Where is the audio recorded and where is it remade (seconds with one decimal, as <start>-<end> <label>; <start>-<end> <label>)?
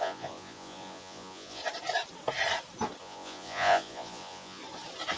0.0-1.6 remade; 1.6-3.0 recorded; 3.0-4.6 remade; 4.6-5.2 recorded